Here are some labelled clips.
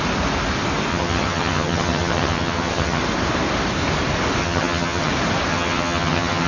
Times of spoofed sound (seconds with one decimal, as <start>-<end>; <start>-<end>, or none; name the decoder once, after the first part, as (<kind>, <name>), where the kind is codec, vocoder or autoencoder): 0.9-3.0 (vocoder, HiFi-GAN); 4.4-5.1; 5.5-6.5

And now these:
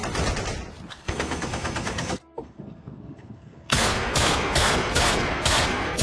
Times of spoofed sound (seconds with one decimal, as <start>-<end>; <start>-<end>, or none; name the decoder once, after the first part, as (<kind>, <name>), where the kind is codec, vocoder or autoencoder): 0.9-6.0 (codec, SNAC)

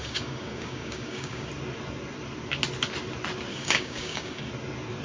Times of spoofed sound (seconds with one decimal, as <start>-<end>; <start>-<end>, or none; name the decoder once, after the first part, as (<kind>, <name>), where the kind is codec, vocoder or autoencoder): 0.0-1.5 (codec, DAC); 3.5-4.5

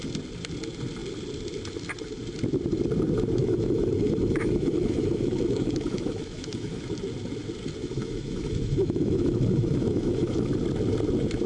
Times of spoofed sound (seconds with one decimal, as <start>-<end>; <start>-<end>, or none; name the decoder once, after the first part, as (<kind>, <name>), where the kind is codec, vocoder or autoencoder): 3.4-6.8 (autoencoder, DAC-VAE); 7.8-10.5

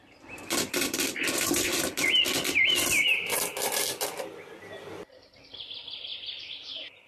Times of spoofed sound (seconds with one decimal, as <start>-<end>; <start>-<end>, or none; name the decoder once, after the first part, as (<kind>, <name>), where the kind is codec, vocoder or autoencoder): 0.0-7.1 (vocoder, BigVGAN v2)

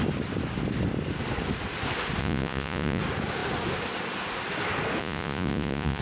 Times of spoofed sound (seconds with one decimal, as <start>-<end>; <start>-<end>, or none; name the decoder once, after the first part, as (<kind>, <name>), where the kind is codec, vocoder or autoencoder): 2.2-3.0 (vocoder, Vocos); 5.0-6.0

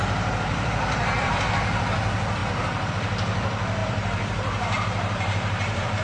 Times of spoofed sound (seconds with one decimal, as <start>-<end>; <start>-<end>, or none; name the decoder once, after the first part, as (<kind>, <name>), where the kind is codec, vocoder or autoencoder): 0.0-1.4 (vocoder, BigVGAN v2); 2.4-2.9; 3.8-6.0

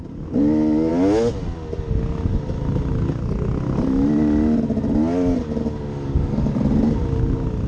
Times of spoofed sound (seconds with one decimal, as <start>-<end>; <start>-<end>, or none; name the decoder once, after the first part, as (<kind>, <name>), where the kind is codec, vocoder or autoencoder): 5.9-6.5 (codec, DAC)